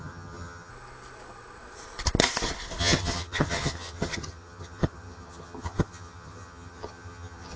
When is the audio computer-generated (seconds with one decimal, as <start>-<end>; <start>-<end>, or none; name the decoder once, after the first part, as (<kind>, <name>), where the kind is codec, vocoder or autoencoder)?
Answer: 0.0-0.7 (vocoder, HiFi-GAN); 2.8-7.6